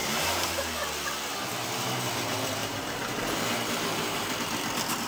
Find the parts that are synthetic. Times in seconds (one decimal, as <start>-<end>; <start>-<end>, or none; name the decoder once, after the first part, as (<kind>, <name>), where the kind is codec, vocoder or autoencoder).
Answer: 0.0-0.6 (vocoder, BigVGAN v2); 2.6-4.6